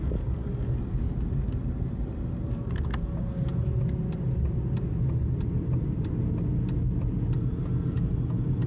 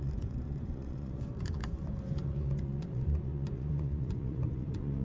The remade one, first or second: second